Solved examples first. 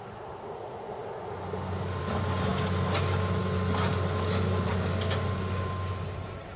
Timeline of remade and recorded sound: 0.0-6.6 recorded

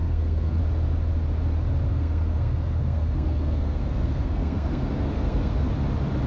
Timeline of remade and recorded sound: 0.0-0.6 remade; 0.6-1.9 recorded; 1.9-5.7 remade; 5.7-6.3 recorded

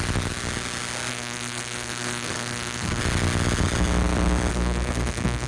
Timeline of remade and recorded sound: 0.0-1.1 recorded; 1.1-3.0 remade; 3.0-4.5 recorded; 4.5-5.5 remade

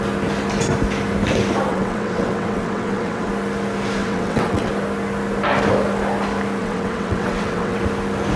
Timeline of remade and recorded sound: 0.0-1.7 recorded; 1.7-3.3 remade; 3.3-4.0 recorded; 4.0-4.7 remade; 4.7-6.6 recorded; 6.6-7.8 remade; 7.8-8.4 recorded